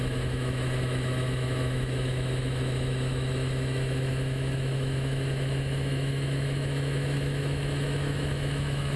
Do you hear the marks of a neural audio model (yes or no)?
yes